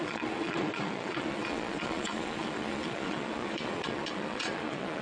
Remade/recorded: remade